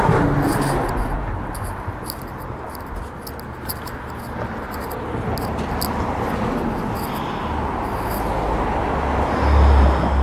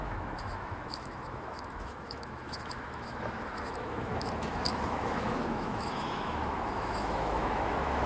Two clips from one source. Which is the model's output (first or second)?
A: second